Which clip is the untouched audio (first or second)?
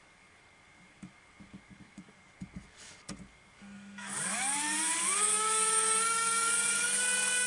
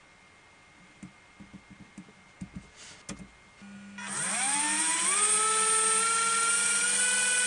second